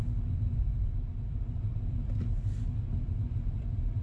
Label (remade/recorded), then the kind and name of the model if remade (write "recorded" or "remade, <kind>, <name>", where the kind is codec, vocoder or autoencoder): recorded